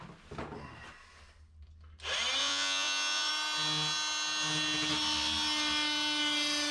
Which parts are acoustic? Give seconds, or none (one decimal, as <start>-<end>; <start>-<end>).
0.0-2.4; 3.3-6.7